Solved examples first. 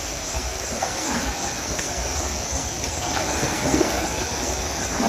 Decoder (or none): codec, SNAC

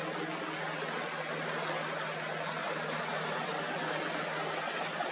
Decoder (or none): none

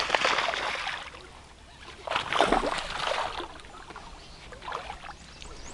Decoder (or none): none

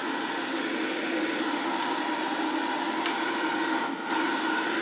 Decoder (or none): none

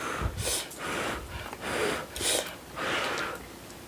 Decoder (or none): none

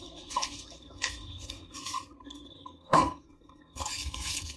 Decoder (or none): codec, SNAC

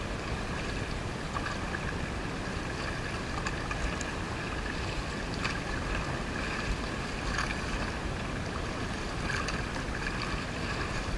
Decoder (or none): none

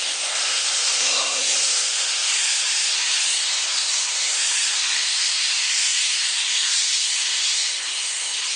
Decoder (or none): codec, SNAC